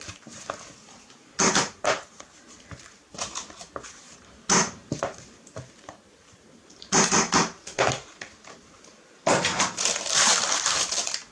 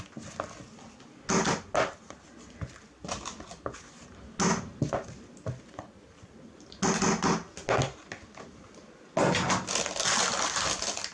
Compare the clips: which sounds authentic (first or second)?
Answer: second